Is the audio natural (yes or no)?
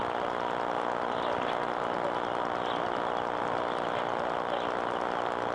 yes